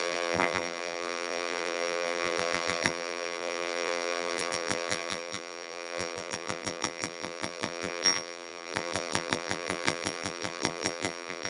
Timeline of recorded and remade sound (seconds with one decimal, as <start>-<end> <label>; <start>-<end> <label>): 0.0-11.5 remade